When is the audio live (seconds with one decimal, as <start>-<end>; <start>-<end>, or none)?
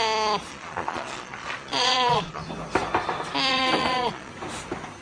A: 0.0-0.5; 2.4-3.5; 4.3-5.0